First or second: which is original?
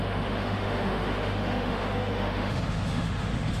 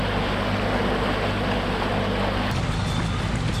second